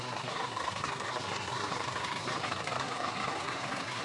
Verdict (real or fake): fake